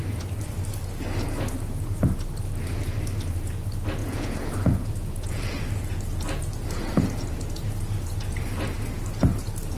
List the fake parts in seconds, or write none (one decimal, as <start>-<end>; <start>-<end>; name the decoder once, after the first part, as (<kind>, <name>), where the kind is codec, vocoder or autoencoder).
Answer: 4.0-5.6 (vocoder, Vocos)